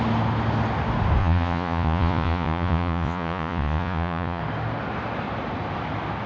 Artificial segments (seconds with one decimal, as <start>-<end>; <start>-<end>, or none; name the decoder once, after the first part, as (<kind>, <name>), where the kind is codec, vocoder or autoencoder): 1.2-4.4 (vocoder, Vocos)